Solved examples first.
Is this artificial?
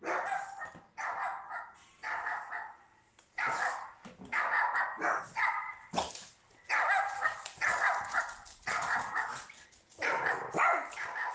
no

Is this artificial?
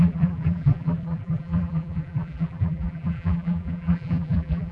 yes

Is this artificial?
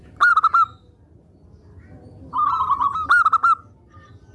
no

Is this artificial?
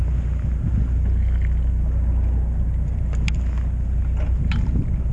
no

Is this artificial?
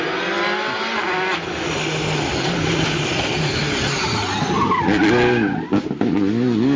no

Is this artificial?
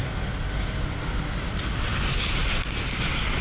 no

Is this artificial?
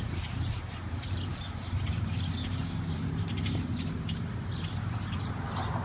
yes